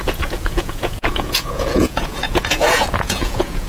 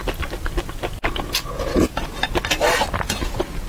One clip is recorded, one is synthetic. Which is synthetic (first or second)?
first